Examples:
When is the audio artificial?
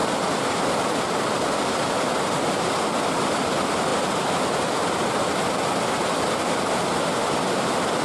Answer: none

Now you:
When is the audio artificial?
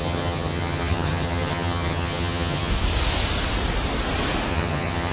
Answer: 0.0-2.7 (vocoder, HiFi-GAN); 4.5-5.1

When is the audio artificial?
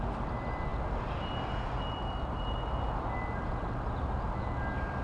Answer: none